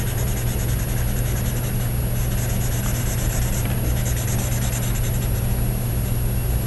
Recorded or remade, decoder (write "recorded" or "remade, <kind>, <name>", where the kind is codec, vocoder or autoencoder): recorded